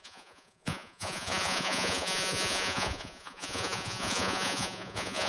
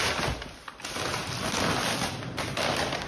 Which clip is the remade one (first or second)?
first